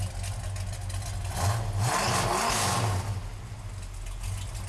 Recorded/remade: recorded